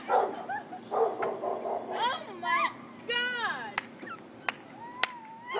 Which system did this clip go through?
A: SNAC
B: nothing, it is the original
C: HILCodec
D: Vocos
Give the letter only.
B